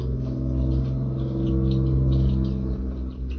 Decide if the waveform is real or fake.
real